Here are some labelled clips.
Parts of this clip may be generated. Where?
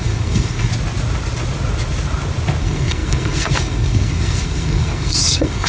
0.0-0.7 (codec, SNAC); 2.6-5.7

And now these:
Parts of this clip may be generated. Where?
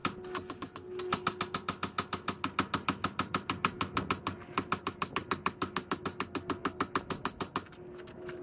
none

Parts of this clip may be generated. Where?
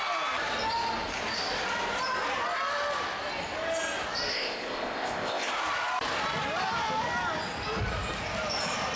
4.3-5.5 (codec, ZipCodec)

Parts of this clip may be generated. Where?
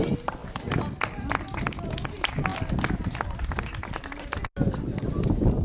none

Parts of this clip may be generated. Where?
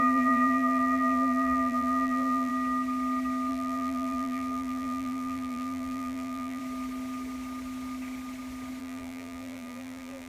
0.0-2.5 (vocoder, BigVGAN v2); 3.5-6.6; 8.8-10.3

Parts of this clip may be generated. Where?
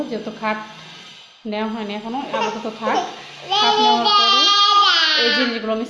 none